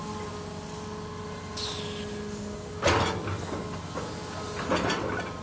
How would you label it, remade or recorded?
recorded